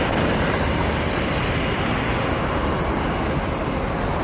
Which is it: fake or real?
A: real